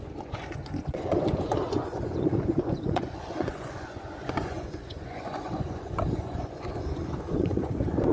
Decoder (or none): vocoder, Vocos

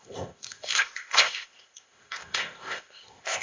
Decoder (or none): codec, ZipCodec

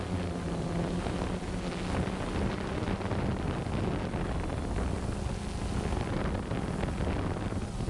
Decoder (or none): none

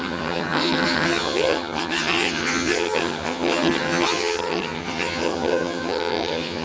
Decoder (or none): vocoder, HiFi-GAN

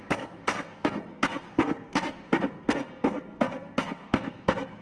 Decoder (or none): codec, SNAC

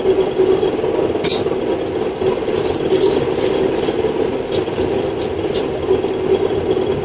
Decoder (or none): none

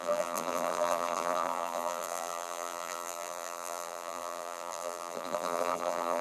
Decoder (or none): vocoder, BigVGAN v2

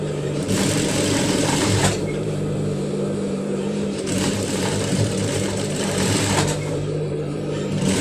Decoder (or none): vocoder, BigVGAN v2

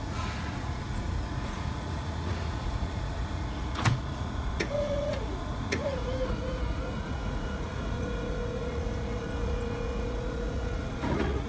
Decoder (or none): vocoder, Vocos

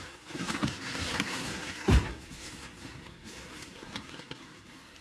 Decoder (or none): codec, SNAC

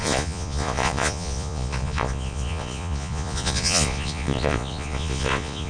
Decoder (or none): vocoder, Vocos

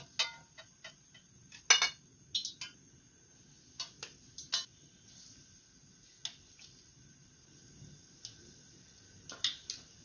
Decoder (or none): none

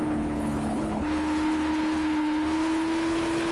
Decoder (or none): codec, HILCodec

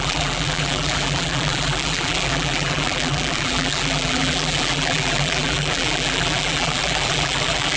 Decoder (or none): vocoder, BigVGAN v2